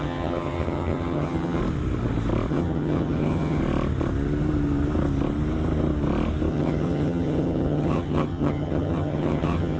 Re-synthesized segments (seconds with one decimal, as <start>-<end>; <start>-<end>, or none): 0.0-1.6; 2.5-3.6; 6.5-9.8